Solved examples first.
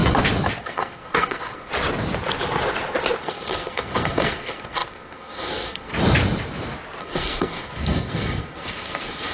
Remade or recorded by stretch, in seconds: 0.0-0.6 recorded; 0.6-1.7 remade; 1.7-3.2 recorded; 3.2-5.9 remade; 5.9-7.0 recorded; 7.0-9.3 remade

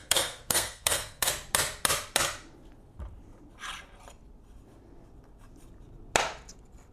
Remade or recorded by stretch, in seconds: 0.0-1.3 remade; 1.3-6.9 recorded

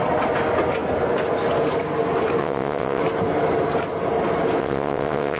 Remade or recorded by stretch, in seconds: 0.0-2.4 recorded; 2.4-3.0 remade; 3.0-4.6 recorded; 4.6-5.4 remade

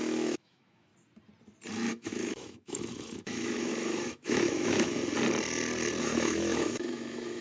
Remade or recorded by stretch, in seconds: 0.0-0.9 remade; 0.9-1.9 recorded; 1.9-5.0 remade; 5.0-6.0 recorded; 6.0-7.4 remade

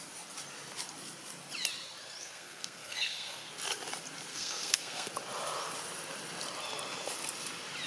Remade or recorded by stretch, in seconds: 0.0-2.2 recorded; 2.2-3.5 remade; 3.5-4.3 recorded; 4.3-5.1 remade; 5.1-7.9 recorded

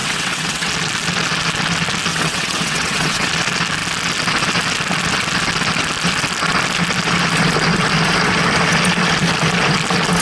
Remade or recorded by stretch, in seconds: 0.0-0.7 remade; 0.7-2.1 recorded; 2.1-3.3 remade; 3.3-10.2 recorded

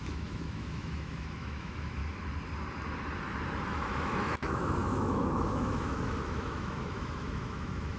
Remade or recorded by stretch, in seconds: 0.0-2.0 remade; 2.0-3.6 recorded; 3.6-8.0 remade